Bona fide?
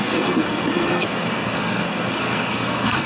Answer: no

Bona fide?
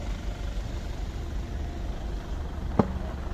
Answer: yes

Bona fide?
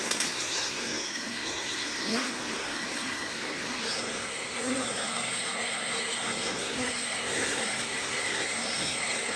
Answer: no